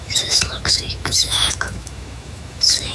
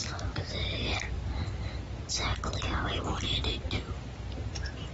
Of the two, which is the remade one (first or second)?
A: first